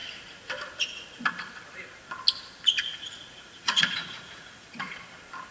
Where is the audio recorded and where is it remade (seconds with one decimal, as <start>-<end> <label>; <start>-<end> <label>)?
0.0-2.9 recorded; 2.9-4.9 remade; 4.9-5.5 recorded